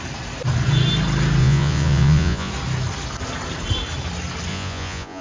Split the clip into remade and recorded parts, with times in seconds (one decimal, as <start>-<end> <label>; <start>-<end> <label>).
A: 0.0-1.4 recorded; 1.4-2.5 remade; 2.5-4.5 recorded; 4.5-5.2 remade

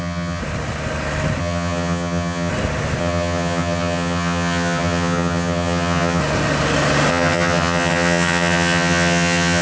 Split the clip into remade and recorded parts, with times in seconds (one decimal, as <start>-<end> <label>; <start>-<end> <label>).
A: 0.0-0.4 remade; 0.4-1.4 recorded; 1.4-2.5 remade; 2.5-3.0 recorded; 3.0-6.2 remade; 6.2-7.1 recorded; 7.1-9.6 remade

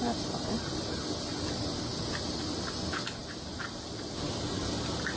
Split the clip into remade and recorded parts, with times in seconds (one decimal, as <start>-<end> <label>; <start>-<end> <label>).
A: 0.0-5.2 recorded

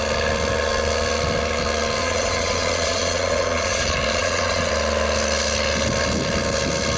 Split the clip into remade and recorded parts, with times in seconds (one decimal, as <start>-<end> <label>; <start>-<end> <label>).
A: 0.0-2.0 recorded; 2.0-4.7 remade; 4.7-7.0 recorded

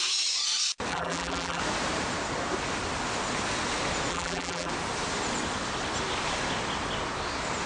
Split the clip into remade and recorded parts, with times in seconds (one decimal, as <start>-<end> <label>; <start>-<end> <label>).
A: 0.0-0.9 recorded; 0.9-1.6 remade; 1.6-4.1 recorded; 4.1-4.7 remade; 4.7-7.7 recorded

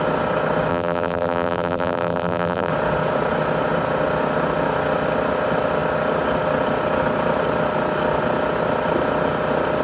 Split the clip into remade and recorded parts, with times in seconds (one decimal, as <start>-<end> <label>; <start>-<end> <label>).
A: 0.0-0.7 recorded; 0.7-2.7 remade; 2.7-9.8 recorded

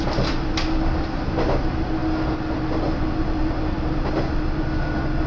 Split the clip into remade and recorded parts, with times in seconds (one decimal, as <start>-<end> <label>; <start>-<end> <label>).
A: 0.0-5.3 recorded

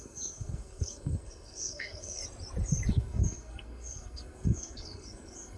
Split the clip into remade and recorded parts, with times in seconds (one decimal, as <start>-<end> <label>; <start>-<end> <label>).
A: 0.0-2.2 remade; 2.2-2.9 recorded; 2.9-5.6 remade